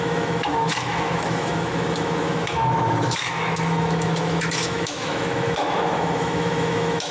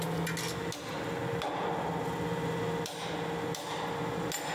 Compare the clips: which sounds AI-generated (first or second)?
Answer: first